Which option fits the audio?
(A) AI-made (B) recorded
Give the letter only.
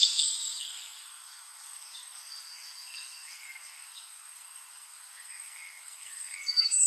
A